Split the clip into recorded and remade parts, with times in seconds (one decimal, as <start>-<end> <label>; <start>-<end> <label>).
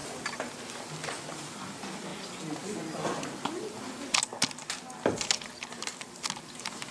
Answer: 0.0-6.9 recorded